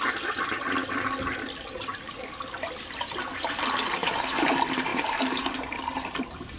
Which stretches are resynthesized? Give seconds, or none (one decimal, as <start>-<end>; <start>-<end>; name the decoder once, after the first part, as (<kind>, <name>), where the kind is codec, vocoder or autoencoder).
4.0-4.5 (vocoder, BigVGAN v2); 4.9-6.6